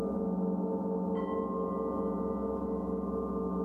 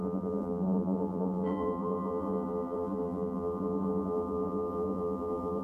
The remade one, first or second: second